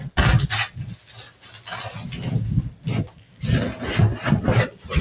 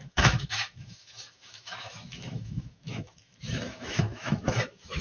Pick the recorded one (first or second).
first